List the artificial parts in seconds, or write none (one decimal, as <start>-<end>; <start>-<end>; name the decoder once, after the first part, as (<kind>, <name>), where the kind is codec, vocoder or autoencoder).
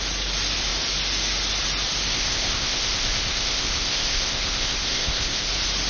2.1-5.5 (codec, ZipCodec)